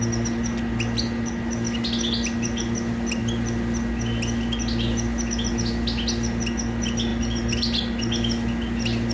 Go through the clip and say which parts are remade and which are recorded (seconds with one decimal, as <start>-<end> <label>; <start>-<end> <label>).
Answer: 0.0-9.1 recorded